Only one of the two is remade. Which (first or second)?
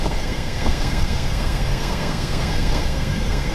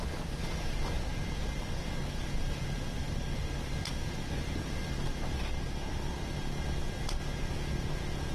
first